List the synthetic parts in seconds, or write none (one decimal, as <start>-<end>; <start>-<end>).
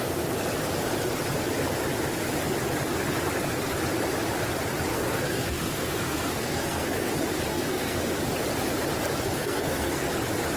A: 4.9-7.1; 7.5-8.2; 9.3-10.1